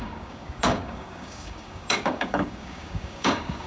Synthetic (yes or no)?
yes